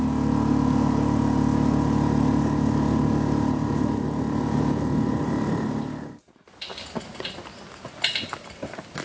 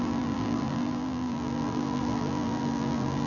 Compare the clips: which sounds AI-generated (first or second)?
second